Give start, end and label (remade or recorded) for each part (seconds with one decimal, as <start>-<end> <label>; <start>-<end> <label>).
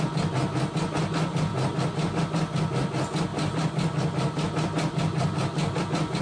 0.0-6.2 recorded